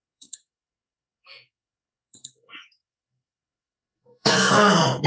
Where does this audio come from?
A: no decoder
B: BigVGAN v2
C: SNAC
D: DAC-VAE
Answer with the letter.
C